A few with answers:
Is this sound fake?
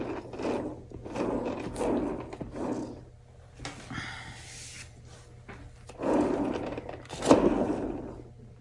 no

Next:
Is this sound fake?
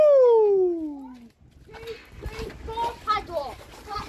no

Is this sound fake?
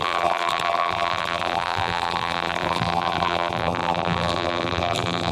yes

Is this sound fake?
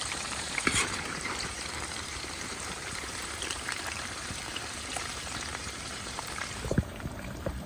yes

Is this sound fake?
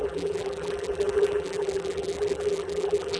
yes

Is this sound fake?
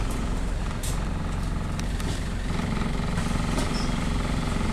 yes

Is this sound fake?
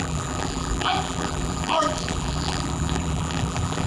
yes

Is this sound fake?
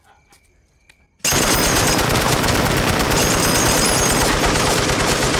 no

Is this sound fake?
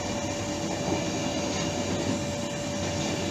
no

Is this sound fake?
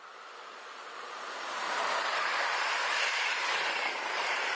yes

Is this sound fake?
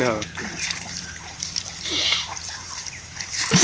yes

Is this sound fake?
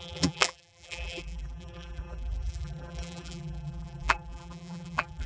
yes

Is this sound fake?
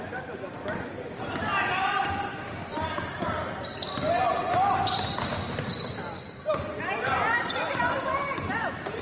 yes